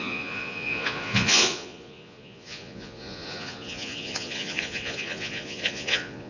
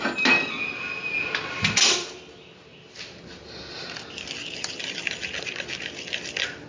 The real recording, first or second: second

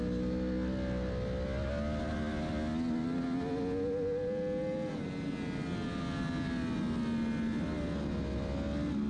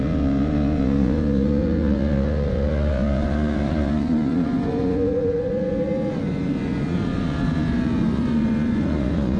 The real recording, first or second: first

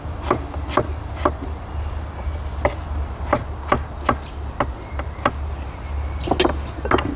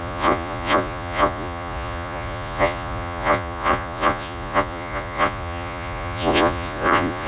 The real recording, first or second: first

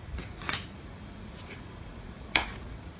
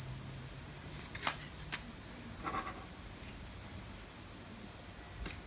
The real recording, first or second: second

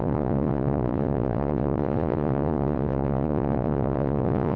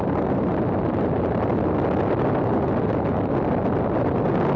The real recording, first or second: second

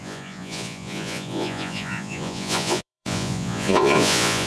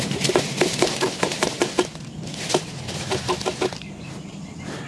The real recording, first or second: second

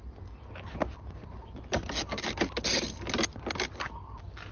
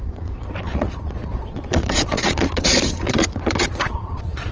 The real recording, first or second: first